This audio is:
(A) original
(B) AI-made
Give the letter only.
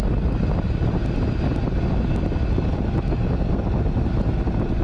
A